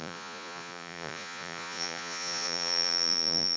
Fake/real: fake